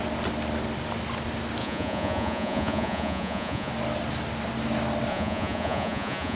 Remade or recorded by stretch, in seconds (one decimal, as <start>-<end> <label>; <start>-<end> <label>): 0.0-1.6 recorded; 1.6-3.7 remade; 3.7-5.1 recorded; 5.1-6.4 remade

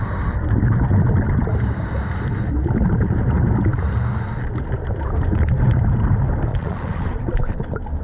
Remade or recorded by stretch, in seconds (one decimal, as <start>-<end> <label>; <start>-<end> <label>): 0.0-6.5 recorded; 6.5-7.2 remade; 7.2-8.0 recorded